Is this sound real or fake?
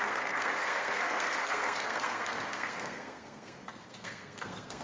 fake